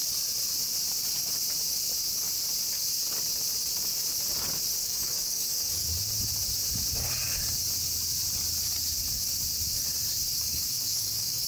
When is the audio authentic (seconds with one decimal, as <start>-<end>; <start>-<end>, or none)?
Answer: 0.0-4.8; 5.9-10.3